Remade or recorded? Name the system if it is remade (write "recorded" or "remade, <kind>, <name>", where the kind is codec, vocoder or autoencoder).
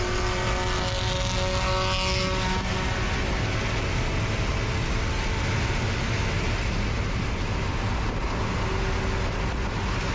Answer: recorded